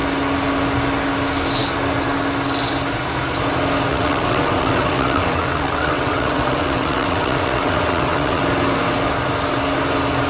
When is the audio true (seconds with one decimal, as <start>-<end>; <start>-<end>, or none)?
0.0-3.9; 8.4-10.3